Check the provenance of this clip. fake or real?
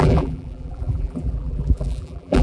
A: fake